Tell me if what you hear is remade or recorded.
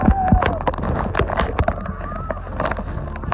recorded